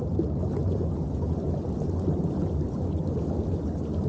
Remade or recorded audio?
recorded